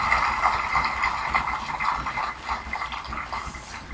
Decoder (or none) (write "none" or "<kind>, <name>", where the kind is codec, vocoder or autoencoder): none